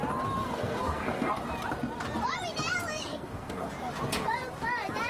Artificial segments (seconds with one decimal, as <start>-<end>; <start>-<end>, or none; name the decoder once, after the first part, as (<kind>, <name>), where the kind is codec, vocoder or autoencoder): 0.4-1.3 (codec, SNAC); 3.1-3.7